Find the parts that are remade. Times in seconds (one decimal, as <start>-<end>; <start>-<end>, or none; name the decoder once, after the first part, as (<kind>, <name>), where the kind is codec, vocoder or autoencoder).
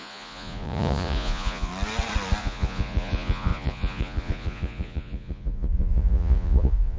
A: 0.0-1.7 (vocoder, Vocos); 2.4-7.0